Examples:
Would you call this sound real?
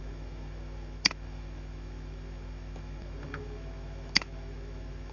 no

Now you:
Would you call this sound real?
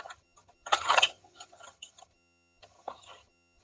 no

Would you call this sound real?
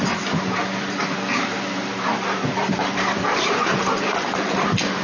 no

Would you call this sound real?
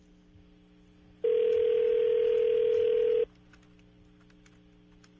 yes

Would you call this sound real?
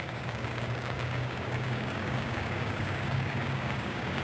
no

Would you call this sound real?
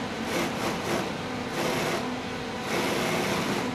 yes